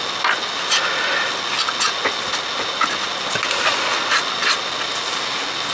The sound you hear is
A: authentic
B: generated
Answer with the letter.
A